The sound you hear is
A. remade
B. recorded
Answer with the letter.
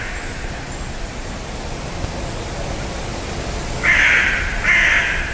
B